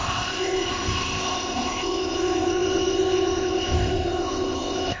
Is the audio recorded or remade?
remade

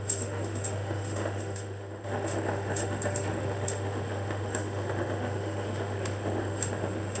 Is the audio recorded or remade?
remade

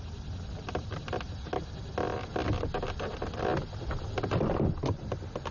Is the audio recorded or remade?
recorded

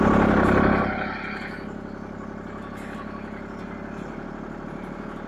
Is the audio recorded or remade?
recorded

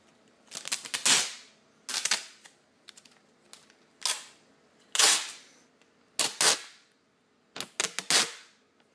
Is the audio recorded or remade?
recorded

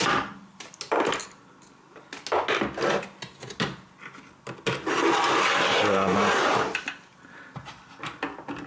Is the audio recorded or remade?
recorded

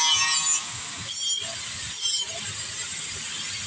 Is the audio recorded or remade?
recorded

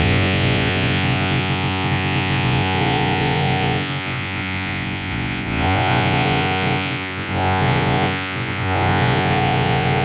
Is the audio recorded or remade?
remade